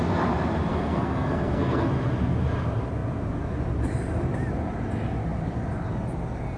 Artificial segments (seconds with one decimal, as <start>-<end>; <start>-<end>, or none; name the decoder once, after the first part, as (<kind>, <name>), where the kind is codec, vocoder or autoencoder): 0.7-1.9 (codec, SNAC)